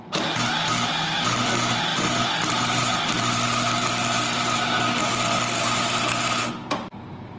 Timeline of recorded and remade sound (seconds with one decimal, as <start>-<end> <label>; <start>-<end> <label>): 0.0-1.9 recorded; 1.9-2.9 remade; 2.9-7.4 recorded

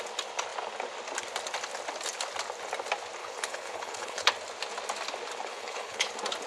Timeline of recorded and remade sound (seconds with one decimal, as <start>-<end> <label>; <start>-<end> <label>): 0.0-3.2 recorded; 3.2-4.3 remade; 4.3-5.5 recorded; 5.5-6.1 remade; 6.1-6.5 recorded

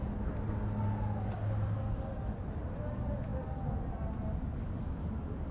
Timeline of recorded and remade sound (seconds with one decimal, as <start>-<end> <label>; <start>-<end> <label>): 0.0-5.5 recorded